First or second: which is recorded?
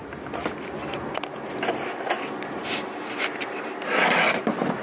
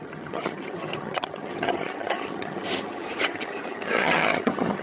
first